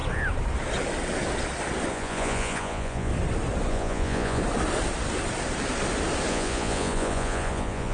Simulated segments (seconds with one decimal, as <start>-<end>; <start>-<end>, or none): 1.9-3.1; 3.7-4.4; 6.3-7.9